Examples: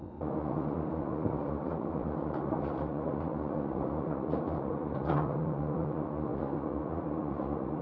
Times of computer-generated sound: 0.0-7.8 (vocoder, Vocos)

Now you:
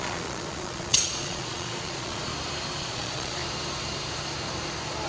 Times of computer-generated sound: 0.0-2.3 (vocoder, Vocos); 2.8-3.4

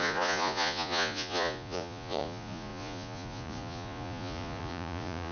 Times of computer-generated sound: 0.0-5.3 (vocoder, Vocos)

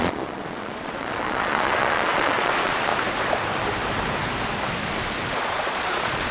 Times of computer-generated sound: 0.0-2.9 (vocoder, Vocos); 5.4-6.3